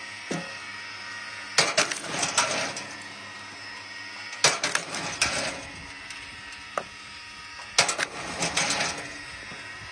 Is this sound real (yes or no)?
yes